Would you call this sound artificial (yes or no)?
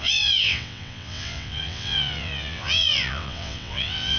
yes